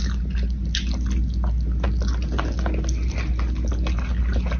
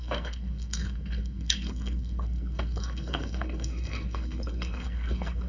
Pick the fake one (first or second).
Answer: second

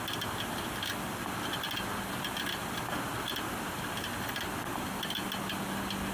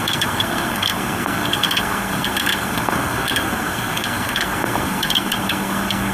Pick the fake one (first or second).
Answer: second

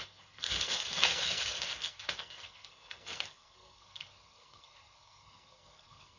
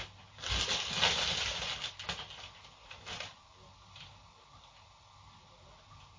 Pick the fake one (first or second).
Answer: first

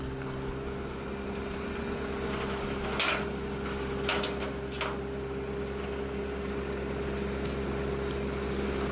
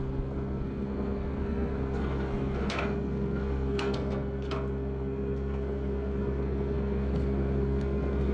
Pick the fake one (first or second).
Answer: second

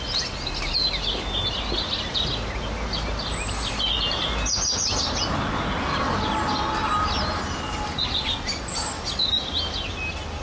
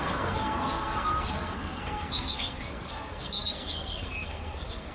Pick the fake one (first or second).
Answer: second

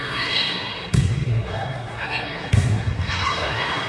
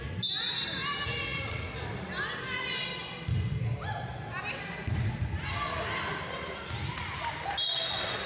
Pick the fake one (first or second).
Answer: first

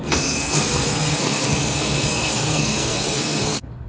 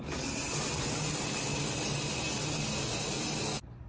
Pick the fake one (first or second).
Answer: first